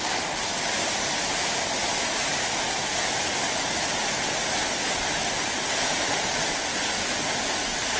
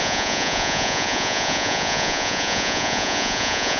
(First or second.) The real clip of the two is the first